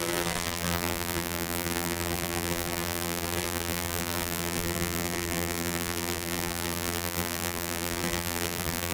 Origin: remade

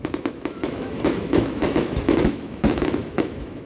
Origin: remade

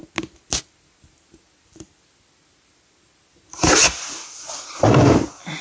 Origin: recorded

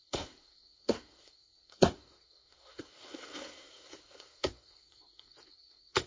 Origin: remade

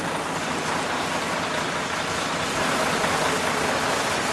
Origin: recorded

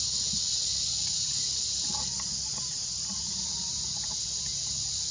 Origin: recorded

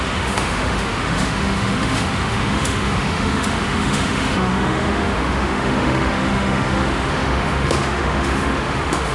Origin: remade